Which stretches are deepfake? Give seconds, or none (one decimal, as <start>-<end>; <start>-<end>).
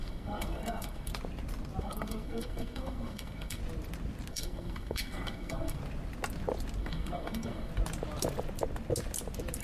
0.0-1.1; 1.8-3.6; 4.3-5.8; 6.8-7.7